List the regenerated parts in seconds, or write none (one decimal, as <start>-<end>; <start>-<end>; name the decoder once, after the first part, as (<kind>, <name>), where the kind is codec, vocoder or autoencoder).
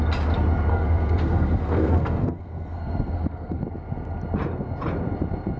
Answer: 0.7-3.6 (codec, SNAC)